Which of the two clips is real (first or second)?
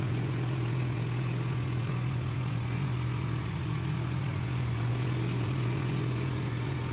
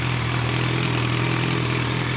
second